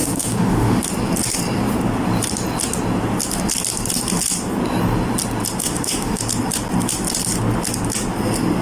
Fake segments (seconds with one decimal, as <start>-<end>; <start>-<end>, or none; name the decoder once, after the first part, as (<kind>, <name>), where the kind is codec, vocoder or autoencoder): 0.0-0.8 (autoencoder, DAC-VAE); 5.6-6.2